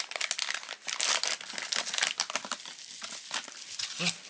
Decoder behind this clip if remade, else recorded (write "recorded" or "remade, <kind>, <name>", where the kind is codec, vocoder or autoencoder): recorded